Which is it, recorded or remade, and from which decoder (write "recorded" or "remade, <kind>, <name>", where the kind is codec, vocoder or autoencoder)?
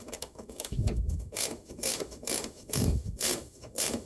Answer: remade, autoencoder, DAC-VAE